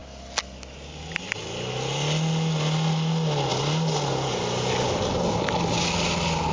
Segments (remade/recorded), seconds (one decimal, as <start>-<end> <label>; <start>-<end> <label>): 0.0-6.5 recorded